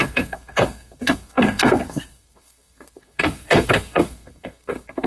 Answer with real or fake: fake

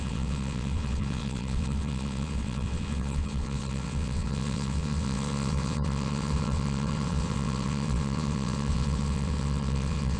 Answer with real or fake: fake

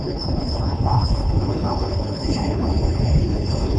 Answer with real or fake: fake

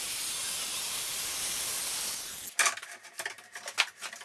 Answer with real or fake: real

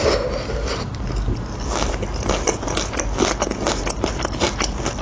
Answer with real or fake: real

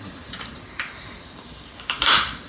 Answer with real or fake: fake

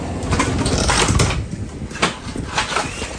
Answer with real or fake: real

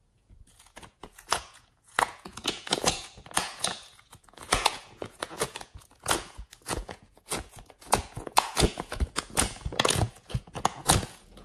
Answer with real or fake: fake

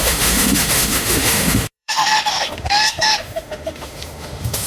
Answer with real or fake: fake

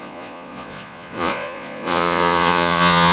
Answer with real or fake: fake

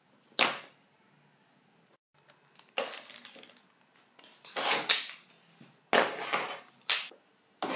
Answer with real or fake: real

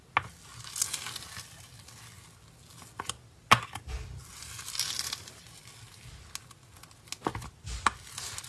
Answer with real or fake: real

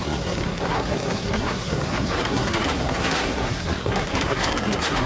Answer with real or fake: fake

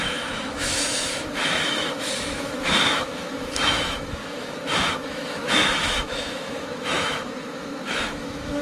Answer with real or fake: fake